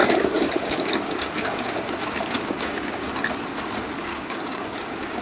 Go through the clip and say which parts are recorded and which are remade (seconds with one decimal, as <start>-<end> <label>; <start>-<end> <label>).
0.0-3.1 remade; 3.1-4.1 recorded; 4.1-5.2 remade